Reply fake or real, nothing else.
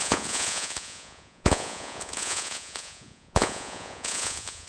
fake